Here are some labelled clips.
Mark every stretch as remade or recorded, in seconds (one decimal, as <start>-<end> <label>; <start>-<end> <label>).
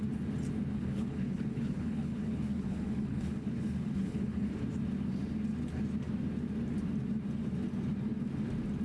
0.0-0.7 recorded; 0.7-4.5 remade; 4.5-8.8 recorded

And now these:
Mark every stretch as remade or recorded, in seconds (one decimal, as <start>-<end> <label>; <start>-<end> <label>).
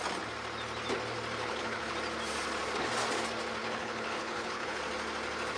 0.0-1.4 recorded; 1.4-1.9 remade; 1.9-3.6 recorded; 3.6-4.8 remade; 4.8-5.6 recorded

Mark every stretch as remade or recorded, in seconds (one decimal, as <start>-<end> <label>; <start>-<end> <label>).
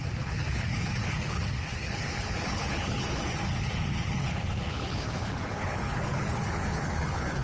0.0-7.4 remade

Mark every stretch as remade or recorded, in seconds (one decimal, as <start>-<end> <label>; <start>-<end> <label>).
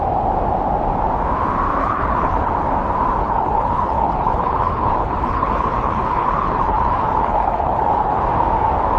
0.0-1.8 recorded; 1.8-2.5 remade; 2.5-3.2 recorded; 3.2-8.2 remade; 8.2-9.0 recorded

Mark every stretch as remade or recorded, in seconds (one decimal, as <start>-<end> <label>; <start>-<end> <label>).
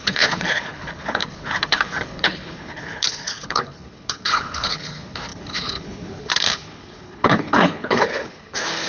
0.0-8.9 remade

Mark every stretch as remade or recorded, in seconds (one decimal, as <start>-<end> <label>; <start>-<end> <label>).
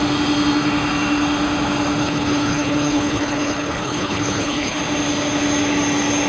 0.0-2.0 recorded; 2.0-4.8 remade; 4.8-6.3 recorded